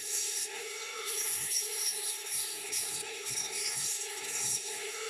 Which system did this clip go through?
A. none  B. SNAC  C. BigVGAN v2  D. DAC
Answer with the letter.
B